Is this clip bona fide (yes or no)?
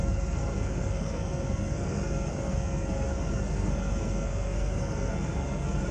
no